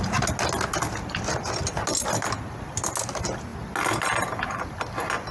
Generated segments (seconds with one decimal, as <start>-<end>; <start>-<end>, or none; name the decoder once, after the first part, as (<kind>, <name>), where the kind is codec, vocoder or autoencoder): none